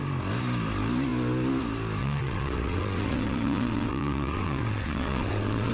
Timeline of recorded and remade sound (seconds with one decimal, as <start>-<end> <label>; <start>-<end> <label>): 0.0-2.0 recorded; 2.0-5.7 remade